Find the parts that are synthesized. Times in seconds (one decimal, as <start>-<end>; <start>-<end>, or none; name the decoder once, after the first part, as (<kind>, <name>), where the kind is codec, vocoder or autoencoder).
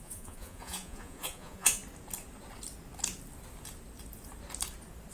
0.0-1.8 (vocoder, Vocos)